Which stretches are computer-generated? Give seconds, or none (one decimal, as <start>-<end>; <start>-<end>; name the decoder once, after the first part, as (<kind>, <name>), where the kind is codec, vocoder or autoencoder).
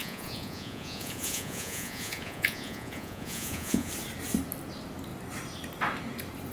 0.0-3.9 (vocoder, Vocos)